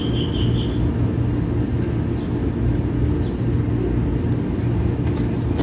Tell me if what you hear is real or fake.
real